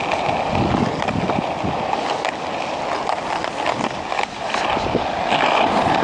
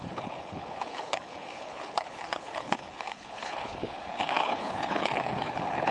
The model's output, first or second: second